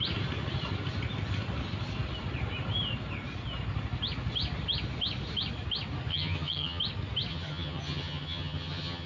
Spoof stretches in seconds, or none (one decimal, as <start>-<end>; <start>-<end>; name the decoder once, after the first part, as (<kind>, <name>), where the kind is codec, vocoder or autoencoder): 6.1-6.8 (vocoder, HiFi-GAN); 7.3-9.1